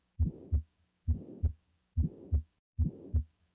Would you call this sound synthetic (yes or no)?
yes